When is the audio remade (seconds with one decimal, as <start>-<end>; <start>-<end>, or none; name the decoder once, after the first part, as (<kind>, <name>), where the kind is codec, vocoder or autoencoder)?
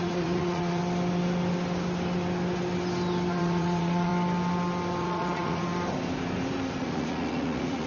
0.0-0.8 (vocoder, Vocos); 3.4-4.1; 5.0-5.7; 6.8-7.9